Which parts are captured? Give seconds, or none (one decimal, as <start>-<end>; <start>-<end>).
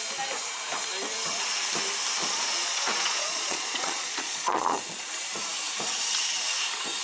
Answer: 0.0-2.2; 5.1-7.0